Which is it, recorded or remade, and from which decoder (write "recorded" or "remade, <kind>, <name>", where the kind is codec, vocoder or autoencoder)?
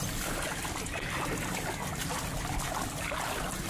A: recorded